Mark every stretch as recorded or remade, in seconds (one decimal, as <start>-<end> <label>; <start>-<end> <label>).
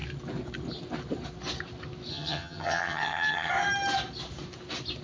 0.0-2.1 recorded; 2.1-3.5 remade; 3.5-5.0 recorded